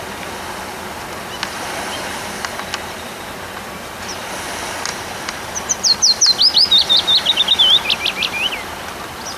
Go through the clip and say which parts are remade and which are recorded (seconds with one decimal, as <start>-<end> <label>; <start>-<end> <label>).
0.0-4.9 recorded; 4.9-8.5 remade; 8.5-9.4 recorded